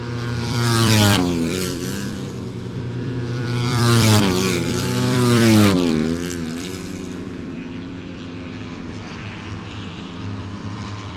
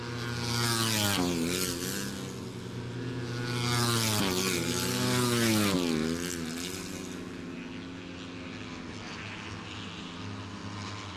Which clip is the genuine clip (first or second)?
second